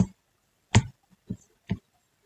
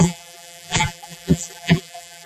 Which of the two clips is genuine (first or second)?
first